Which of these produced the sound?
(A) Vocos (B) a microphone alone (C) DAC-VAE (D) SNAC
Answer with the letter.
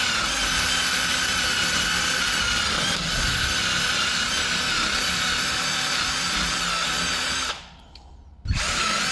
B